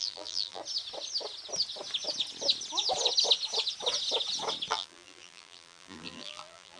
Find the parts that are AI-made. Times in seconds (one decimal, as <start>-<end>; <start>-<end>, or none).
0.0-0.6; 4.7-6.8